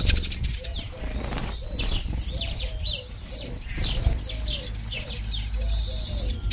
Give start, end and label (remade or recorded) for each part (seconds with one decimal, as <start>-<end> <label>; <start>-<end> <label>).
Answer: 0.0-6.5 recorded